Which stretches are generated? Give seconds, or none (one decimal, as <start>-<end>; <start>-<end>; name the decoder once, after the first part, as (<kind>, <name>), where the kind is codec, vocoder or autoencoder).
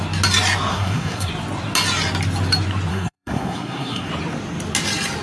0.7-1.3 (codec, SNAC); 2.9-4.1